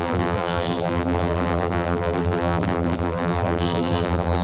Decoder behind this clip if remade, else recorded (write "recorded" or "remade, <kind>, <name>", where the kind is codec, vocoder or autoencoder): remade, vocoder, BigVGAN v2